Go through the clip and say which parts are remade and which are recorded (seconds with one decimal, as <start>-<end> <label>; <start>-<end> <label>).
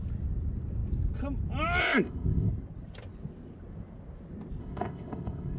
0.0-1.8 recorded; 1.8-2.5 remade; 2.5-4.6 recorded; 4.6-5.6 remade